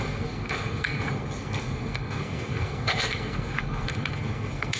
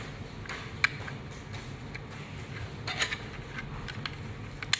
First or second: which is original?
second